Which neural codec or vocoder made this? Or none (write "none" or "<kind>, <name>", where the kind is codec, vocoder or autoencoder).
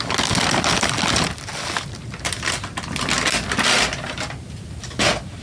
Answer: none